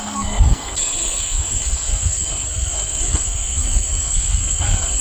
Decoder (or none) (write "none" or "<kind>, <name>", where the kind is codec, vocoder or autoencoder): codec, SNAC